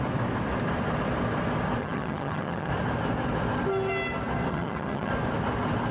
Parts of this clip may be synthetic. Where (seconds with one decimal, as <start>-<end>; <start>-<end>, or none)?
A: 1.8-2.7; 4.5-5.1